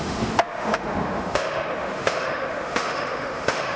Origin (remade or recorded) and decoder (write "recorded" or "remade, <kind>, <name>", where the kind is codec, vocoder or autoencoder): remade, autoencoder, DAC-VAE